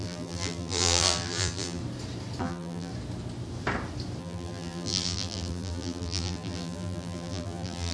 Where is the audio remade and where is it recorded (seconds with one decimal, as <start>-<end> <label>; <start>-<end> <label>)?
0.0-1.8 remade; 1.8-2.4 recorded; 2.4-2.9 remade; 2.9-4.2 recorded; 4.2-7.9 remade